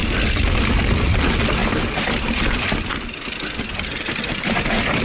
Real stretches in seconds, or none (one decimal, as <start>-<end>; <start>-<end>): 0.0-1.0; 1.6-2.4